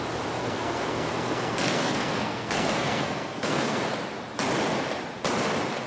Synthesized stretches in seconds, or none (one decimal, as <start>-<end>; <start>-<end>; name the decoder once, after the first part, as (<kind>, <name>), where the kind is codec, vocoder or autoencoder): 0.4-3.8 (codec, SNAC)

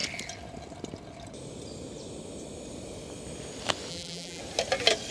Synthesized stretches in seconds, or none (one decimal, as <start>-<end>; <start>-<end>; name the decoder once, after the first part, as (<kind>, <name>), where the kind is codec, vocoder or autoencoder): 3.9-4.4 (vocoder, BigVGAN v2)

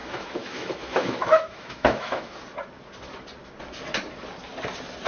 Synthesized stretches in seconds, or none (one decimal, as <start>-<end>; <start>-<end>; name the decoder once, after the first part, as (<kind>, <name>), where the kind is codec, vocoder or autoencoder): 0.0-2.3 (autoencoder, DAC-VAE)